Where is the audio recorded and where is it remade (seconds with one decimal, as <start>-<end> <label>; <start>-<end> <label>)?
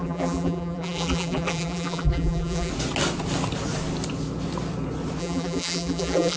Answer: 0.0-2.7 remade; 2.7-5.2 recorded; 5.2-6.4 remade